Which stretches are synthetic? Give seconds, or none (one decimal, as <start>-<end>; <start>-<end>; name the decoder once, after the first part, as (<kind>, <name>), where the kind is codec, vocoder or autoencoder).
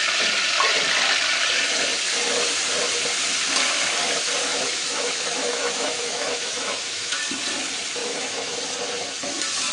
4.5-7.2 (autoencoder, DAC-VAE); 8.0-8.6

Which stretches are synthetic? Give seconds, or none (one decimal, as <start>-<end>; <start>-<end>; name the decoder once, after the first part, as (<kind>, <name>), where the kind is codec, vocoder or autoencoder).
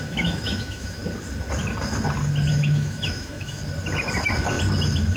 0.0-1.0 (autoencoder, DAC-VAE); 2.5-3.6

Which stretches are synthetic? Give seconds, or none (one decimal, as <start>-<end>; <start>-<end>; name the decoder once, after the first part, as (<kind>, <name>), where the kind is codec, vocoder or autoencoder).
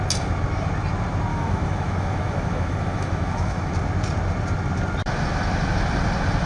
1.3-3.7 (autoencoder, DAC-VAE)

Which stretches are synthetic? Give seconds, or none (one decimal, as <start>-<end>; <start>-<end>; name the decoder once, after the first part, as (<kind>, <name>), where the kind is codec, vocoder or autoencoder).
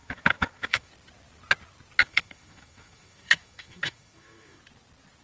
0.0-0.9 (autoencoder, DAC-VAE); 2.0-4.6